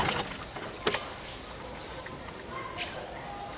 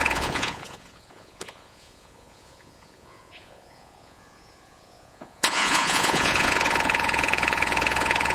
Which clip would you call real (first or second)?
first